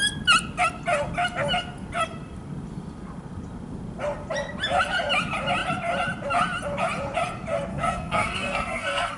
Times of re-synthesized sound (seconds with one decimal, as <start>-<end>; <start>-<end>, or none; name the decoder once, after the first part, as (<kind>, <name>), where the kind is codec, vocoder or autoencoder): 7.7-9.2 (codec, SNAC)